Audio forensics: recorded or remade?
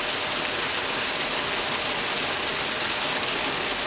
recorded